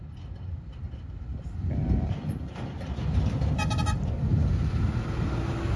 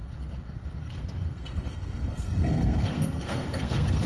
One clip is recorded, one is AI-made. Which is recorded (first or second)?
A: first